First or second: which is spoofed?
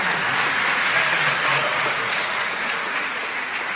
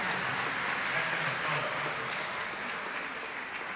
first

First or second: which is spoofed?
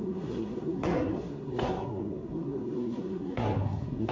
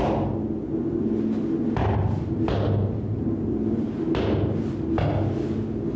first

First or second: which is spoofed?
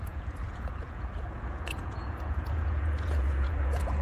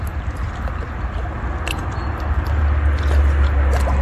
first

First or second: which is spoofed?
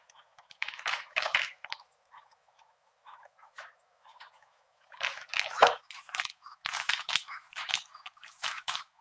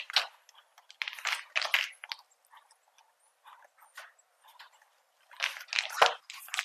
first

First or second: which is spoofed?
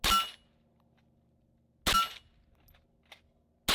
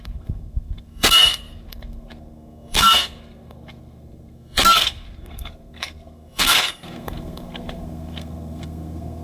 second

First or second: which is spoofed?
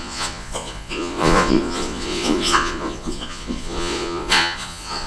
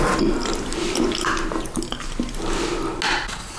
first